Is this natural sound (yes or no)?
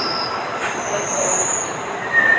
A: yes